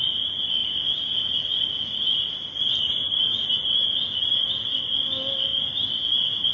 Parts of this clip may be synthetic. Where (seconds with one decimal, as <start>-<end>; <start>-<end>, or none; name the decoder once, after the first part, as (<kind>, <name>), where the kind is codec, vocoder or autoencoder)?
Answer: none